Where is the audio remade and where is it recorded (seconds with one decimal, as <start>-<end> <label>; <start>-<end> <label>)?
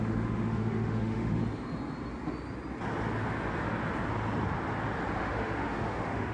0.0-1.4 remade; 1.4-5.2 recorded; 5.2-6.3 remade